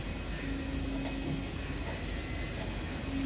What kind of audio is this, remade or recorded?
recorded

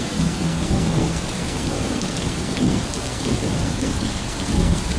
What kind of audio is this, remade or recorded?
remade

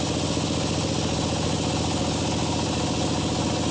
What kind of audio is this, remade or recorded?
recorded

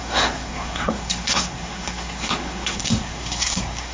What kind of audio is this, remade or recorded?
remade